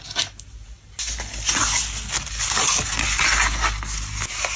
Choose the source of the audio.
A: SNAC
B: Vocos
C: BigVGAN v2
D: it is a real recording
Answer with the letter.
D